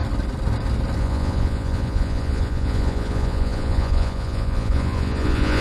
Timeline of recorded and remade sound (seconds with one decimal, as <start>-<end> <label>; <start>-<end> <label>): 0.0-1.0 recorded; 1.0-5.6 remade